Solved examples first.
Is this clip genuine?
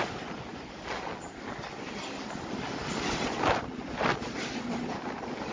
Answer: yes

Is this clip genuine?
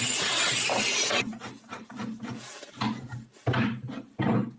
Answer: yes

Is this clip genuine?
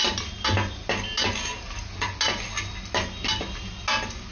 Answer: yes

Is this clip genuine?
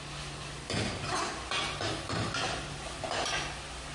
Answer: yes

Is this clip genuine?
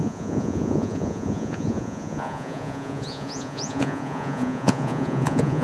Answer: no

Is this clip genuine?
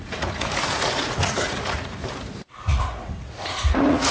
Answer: no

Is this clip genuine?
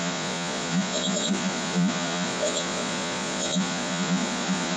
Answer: no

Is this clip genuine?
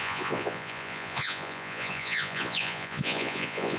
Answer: no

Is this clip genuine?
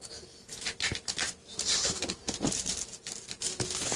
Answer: yes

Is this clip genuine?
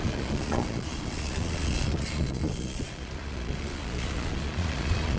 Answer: no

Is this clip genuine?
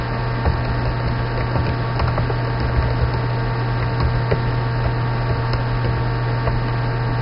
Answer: yes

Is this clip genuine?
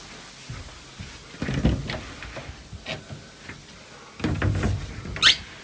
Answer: yes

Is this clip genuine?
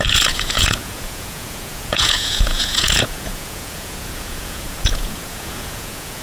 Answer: no